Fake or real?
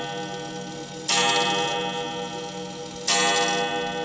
real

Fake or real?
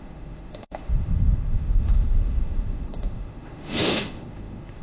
fake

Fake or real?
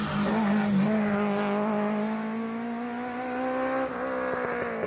real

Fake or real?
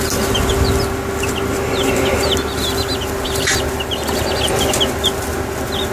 real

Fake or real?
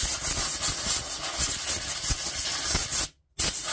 real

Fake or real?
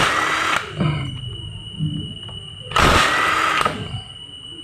real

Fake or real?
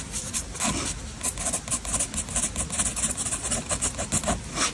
real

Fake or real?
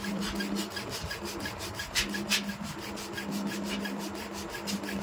real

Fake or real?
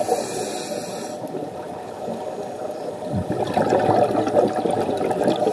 real